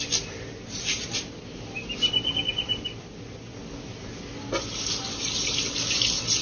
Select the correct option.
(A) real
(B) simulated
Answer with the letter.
A